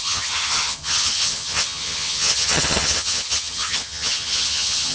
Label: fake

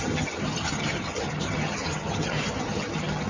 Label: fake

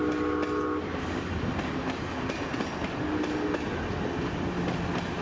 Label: real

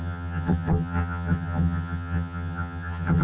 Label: fake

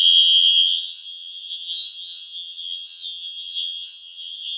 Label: fake